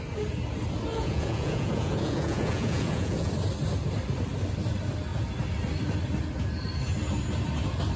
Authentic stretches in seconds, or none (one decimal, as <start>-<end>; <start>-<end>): 0.0-0.9; 3.3-8.0